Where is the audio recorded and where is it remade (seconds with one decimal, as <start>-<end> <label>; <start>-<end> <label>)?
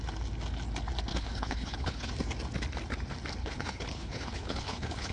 0.0-1.1 recorded; 1.1-2.1 remade; 2.1-3.4 recorded; 3.4-5.1 remade